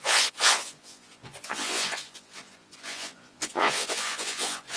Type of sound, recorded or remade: remade